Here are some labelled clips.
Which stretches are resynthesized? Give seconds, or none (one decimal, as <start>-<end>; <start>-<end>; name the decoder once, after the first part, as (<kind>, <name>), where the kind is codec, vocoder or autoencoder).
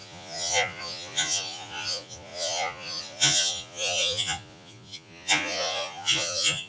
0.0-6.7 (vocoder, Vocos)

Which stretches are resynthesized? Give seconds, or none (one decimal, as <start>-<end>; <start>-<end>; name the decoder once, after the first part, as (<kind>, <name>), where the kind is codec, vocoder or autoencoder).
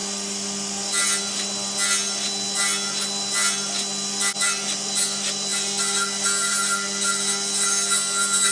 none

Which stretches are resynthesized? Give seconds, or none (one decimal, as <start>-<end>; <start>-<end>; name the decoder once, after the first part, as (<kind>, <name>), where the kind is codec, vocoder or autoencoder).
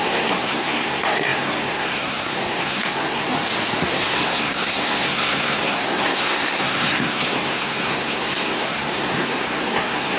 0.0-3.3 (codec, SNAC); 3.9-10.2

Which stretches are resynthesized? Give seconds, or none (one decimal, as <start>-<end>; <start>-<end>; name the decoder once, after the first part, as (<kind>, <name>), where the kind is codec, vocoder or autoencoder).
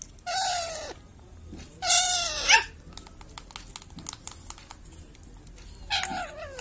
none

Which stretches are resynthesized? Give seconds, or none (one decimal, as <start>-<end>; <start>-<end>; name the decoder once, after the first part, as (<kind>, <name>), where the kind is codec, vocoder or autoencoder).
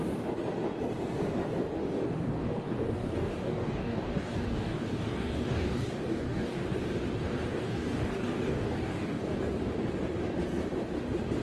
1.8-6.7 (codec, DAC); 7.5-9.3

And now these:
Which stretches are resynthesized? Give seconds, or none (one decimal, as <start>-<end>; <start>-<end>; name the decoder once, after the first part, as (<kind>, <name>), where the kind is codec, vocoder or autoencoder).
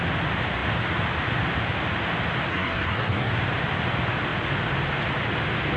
2.5-3.3 (codec, SNAC)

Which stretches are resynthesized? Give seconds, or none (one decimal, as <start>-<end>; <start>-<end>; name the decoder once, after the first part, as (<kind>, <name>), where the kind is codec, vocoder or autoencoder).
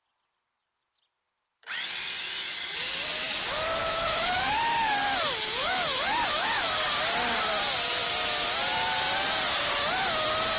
3.8-5.0 (autoencoder, DAC-VAE); 5.6-6.5